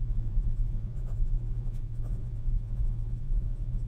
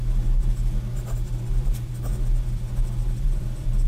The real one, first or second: second